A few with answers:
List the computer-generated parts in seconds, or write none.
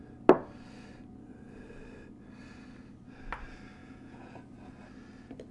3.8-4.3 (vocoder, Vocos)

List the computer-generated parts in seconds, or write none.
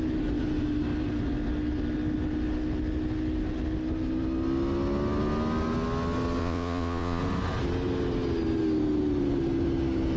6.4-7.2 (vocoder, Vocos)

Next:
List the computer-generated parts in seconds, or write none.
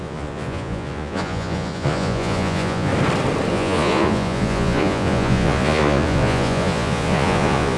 0.0-2.9 (vocoder, Vocos); 3.5-7.8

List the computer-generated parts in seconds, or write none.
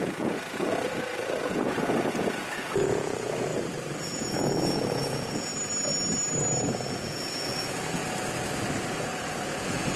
0.0-3.5 (vocoder, Vocos); 4.0-5.5; 6.9-8.0; 8.8-10.0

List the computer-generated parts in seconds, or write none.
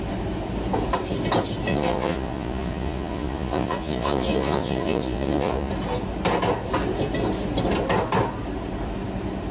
1.7-5.7 (vocoder, Vocos)